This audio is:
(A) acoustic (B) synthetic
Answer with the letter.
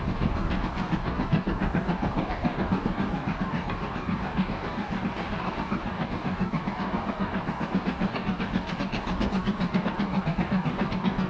B